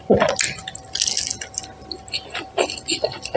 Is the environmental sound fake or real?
real